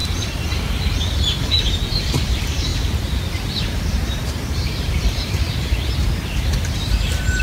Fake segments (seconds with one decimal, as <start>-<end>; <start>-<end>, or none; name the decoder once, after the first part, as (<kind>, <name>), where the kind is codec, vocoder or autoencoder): 1.6-2.7 (vocoder, BigVGAN v2); 3.5-7.4